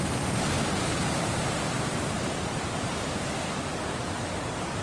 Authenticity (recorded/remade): remade